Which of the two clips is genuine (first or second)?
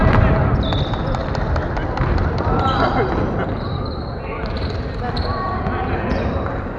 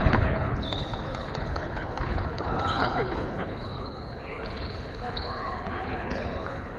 first